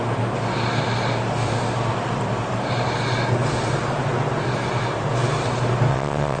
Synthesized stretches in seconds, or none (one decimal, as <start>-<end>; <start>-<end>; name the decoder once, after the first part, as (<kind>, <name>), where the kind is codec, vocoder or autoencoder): 5.9-6.4 (vocoder, WaveNeXt)